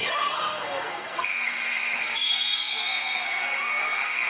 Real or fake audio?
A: fake